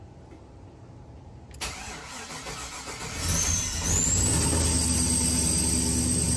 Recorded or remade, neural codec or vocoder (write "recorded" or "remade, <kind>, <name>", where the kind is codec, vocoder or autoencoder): recorded